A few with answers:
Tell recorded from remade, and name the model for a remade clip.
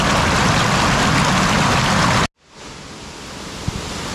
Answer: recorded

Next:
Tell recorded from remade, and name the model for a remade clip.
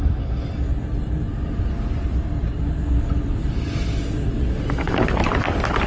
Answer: recorded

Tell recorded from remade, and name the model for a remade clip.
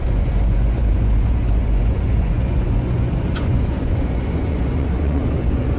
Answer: remade, vocoder, Vocos